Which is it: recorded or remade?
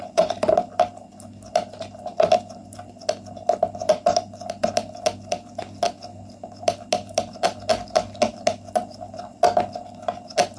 recorded